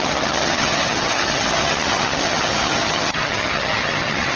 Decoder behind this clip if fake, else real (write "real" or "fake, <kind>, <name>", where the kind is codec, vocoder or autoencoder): fake, vocoder, HiFi-GAN